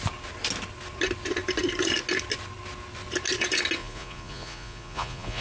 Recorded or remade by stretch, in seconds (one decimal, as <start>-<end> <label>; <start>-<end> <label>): 0.0-3.8 recorded; 3.8-5.4 remade